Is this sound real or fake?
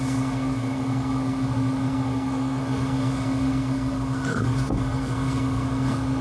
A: fake